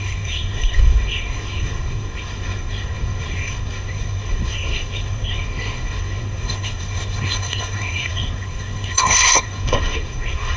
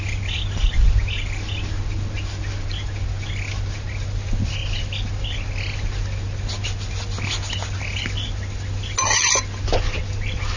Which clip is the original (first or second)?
second